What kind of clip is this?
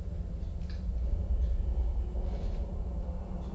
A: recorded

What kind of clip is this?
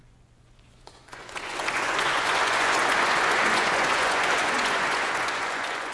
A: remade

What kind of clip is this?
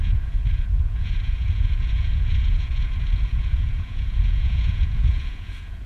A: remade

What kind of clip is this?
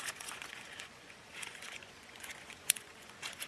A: remade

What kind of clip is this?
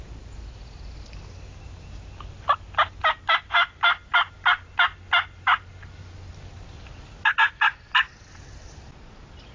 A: recorded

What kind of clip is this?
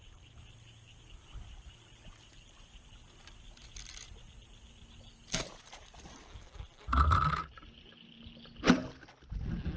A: recorded